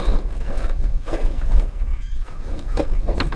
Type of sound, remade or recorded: remade